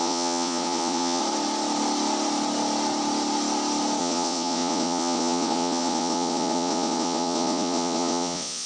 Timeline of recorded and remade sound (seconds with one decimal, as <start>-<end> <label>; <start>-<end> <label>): 0.0-1.2 remade; 1.2-4.0 recorded; 4.0-8.7 remade